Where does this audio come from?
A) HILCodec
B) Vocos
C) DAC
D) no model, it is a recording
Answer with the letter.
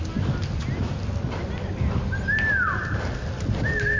D